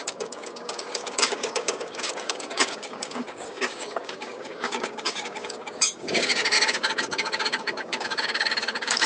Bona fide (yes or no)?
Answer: no